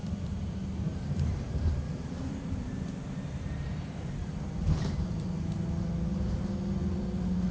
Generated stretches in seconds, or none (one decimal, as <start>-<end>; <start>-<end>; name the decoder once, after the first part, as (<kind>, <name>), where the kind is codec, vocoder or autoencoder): 0.9-5.4 (vocoder, BigVGAN v2)

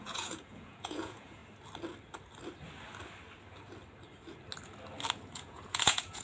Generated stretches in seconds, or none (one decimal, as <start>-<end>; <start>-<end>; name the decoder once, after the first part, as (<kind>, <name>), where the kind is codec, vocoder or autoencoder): 0.0-1.4 (vocoder, Vocos); 5.1-6.2

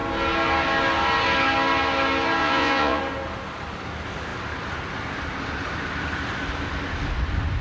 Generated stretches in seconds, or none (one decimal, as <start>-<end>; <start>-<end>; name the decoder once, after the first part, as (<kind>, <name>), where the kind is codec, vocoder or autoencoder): 2.4-3.0 (vocoder, Vocos)